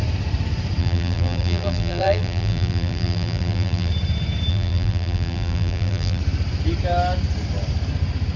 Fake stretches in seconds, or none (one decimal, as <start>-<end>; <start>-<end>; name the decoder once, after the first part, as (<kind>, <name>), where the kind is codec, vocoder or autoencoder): 0.8-3.9 (vocoder, BigVGAN v2); 4.5-6.2